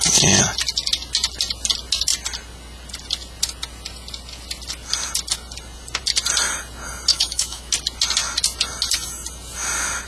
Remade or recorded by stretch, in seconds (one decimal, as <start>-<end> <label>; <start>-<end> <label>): 0.0-7.1 recorded; 7.1-7.7 remade; 7.7-10.1 recorded